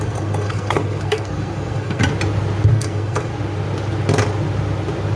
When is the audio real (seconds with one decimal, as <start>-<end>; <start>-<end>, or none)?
2.0-2.7; 3.3-5.2